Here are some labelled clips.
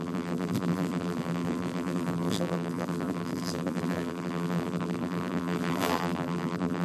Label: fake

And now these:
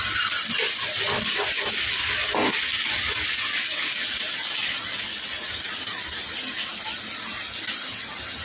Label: real